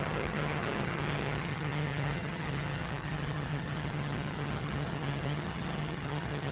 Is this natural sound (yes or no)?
no